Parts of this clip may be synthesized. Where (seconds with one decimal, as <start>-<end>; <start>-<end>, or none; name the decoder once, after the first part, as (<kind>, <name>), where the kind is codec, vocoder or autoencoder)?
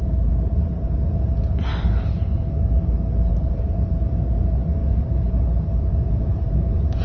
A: 0.0-1.7 (vocoder, Vocos); 3.3-7.0